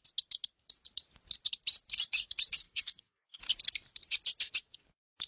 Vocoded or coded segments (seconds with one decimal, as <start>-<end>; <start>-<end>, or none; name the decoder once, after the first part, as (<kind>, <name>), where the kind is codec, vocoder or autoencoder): 2.6-3.4 (codec, SNAC)